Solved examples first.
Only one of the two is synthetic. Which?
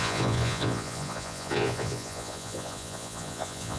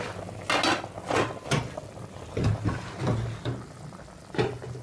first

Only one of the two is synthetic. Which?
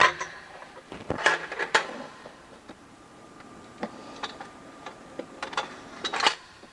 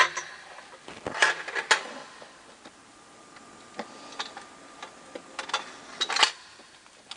first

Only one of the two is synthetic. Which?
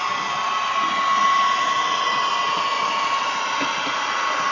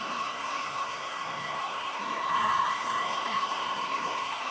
second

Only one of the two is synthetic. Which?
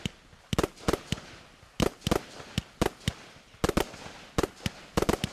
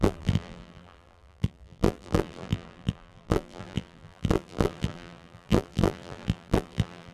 second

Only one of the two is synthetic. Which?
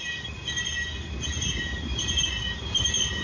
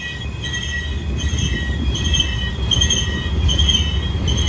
first